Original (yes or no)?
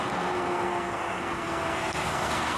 no